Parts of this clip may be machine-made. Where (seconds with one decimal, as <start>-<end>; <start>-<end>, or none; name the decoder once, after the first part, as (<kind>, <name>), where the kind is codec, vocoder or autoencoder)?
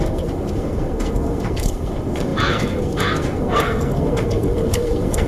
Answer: 0.0-5.3 (codec, SNAC)